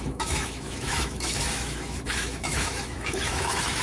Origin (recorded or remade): remade